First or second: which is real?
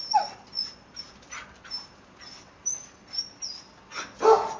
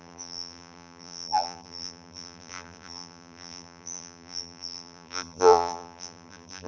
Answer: first